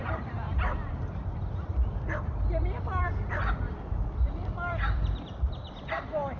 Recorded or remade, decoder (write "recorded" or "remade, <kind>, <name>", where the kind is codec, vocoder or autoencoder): remade, vocoder, BigVGAN v2